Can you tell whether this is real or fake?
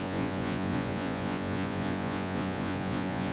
fake